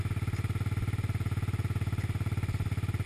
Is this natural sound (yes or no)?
yes